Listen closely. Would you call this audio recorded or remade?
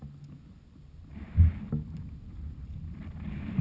recorded